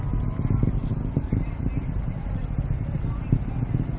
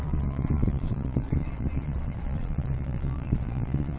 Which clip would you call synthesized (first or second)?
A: second